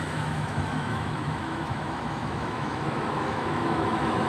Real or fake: fake